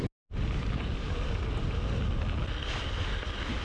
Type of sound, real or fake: real